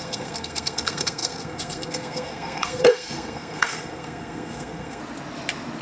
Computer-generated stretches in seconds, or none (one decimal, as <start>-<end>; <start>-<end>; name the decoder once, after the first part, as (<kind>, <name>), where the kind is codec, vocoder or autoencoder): 0.0-5.0 (codec, SNAC)

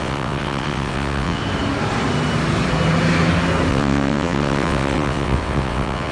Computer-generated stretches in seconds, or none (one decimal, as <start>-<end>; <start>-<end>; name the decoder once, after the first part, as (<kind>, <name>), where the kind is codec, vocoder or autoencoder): 0.0-1.4 (vocoder, WaveNeXt); 3.7-6.1

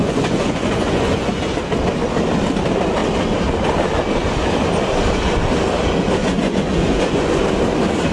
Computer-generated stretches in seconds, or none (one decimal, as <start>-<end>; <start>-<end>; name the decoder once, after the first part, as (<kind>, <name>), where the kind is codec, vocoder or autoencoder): 0.0-1.4 (vocoder, Vocos); 6.2-7.3

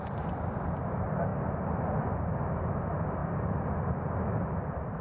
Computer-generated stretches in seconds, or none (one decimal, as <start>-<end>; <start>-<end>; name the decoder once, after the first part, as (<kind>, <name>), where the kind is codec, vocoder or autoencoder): 3.2-5.0 (vocoder, BigVGAN v2)

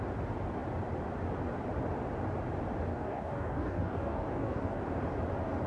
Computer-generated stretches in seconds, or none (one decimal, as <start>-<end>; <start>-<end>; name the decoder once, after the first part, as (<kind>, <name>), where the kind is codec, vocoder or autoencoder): 2.9-4.8 (codec, DAC)

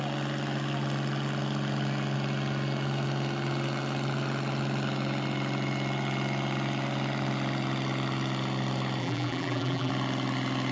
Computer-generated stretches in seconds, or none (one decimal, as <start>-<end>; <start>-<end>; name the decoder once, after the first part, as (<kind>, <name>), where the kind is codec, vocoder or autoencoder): 9.0-9.9 (vocoder, BigVGAN v2)

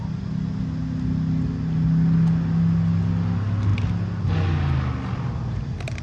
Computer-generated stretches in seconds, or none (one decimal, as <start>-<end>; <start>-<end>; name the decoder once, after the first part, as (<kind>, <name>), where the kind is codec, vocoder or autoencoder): none

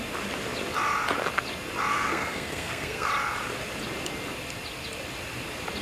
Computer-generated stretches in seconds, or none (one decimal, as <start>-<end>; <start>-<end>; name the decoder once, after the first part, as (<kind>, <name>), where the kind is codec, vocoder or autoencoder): 1.9-3.1 (codec, SNAC)